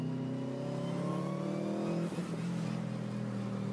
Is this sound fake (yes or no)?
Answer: no